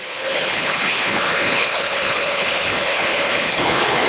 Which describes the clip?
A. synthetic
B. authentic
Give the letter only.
A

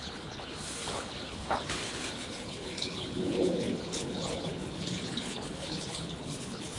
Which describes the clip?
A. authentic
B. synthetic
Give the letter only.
B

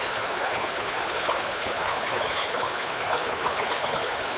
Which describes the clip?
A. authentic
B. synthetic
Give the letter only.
B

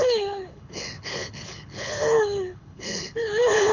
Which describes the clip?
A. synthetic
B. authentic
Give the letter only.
A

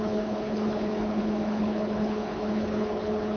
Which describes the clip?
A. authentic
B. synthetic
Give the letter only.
B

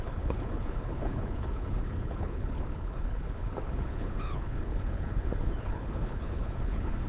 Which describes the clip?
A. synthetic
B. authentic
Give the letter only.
A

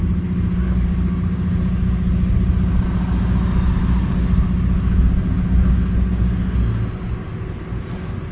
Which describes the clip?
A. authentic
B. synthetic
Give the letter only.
A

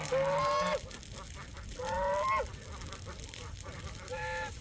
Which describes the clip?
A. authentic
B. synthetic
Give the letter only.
A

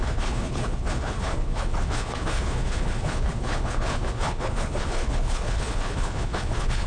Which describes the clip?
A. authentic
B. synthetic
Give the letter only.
B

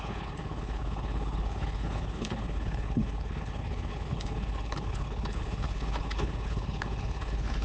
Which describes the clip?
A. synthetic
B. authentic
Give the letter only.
A